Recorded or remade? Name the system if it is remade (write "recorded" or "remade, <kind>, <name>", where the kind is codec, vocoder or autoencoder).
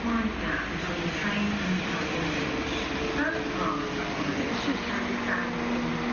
recorded